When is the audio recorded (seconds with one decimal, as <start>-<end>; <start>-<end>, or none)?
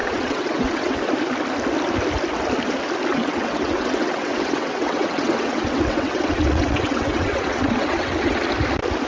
1.0-3.1; 8.4-9.1